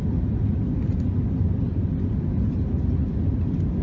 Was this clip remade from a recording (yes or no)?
no